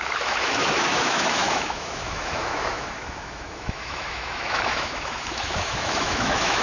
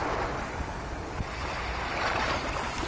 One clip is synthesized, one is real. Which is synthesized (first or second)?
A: first